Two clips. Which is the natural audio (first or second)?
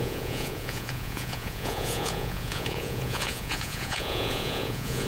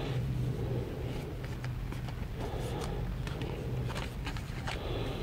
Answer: second